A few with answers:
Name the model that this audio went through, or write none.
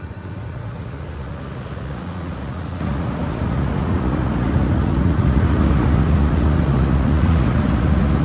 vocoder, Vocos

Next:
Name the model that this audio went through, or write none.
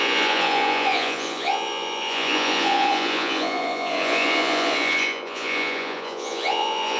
vocoder, Vocos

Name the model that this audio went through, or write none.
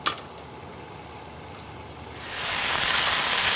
none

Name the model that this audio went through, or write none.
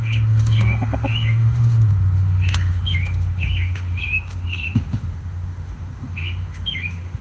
autoencoder, DAC-VAE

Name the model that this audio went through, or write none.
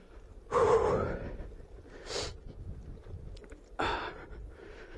none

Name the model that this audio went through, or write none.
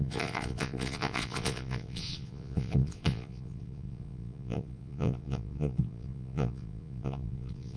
vocoder, Vocos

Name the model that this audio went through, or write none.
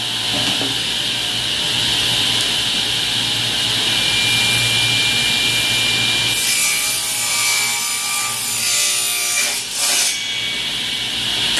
none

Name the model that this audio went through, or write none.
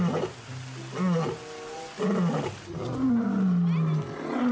none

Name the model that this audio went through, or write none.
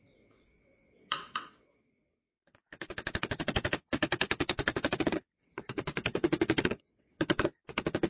vocoder, WaveNeXt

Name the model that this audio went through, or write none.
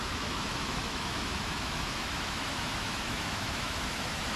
autoencoder, DAC-VAE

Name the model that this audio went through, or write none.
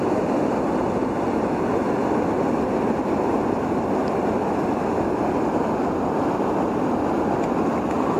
none